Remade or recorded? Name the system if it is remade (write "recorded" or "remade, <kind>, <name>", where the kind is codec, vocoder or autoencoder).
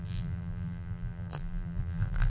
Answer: remade, vocoder, BigVGAN v2